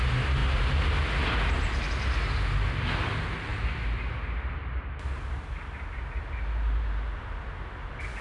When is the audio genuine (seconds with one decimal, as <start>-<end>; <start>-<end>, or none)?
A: 0.0-8.2